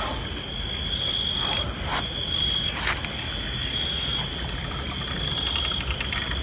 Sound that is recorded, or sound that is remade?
recorded